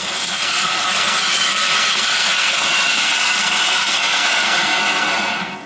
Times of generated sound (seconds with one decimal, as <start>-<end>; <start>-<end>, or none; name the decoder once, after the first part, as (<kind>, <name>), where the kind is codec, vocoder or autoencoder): 0.0-5.7 (codec, SNAC)